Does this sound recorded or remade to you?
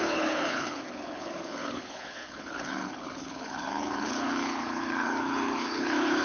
remade